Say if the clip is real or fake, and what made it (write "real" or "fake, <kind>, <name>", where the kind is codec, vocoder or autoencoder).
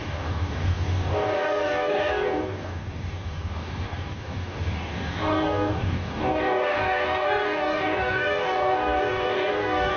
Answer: fake, codec, DAC